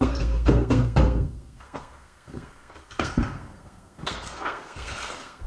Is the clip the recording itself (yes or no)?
no